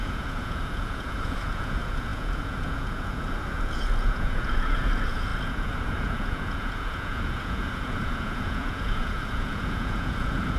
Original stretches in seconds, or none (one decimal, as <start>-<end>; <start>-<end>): none